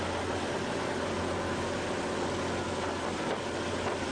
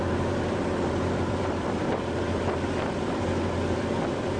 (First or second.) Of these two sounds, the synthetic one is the second